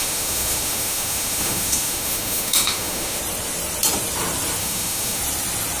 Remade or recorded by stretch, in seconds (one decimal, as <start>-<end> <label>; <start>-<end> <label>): 0.0-3.2 remade; 3.2-4.6 recorded; 4.6-5.2 remade; 5.2-5.8 recorded